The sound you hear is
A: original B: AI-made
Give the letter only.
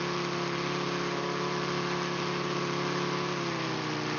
A